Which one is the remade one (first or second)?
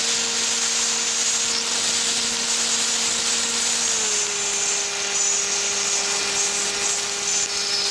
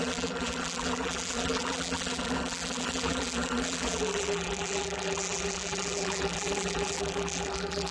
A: second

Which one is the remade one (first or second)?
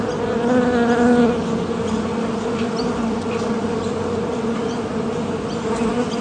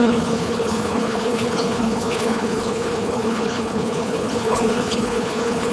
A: second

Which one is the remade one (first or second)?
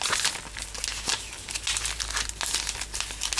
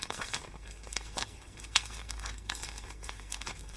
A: second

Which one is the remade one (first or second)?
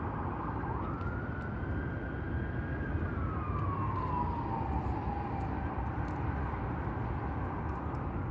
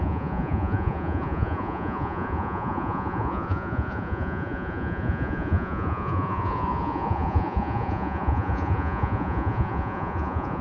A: second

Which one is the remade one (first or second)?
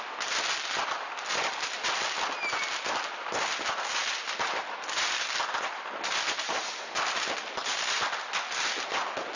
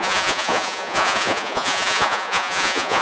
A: second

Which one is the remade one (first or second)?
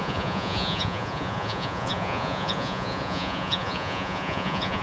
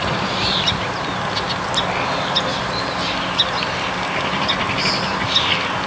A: first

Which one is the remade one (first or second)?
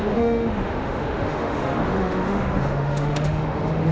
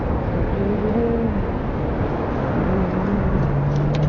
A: first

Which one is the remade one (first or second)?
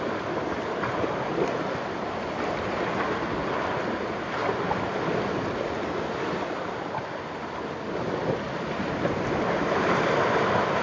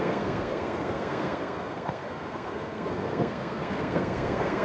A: second